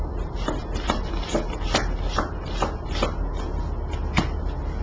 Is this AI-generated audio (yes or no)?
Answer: no